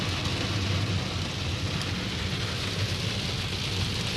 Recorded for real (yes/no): yes